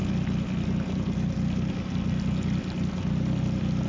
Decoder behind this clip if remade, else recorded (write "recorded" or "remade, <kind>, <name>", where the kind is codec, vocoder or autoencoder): recorded